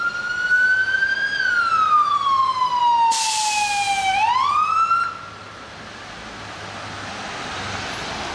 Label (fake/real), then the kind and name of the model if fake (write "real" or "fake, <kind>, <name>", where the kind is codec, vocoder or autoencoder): real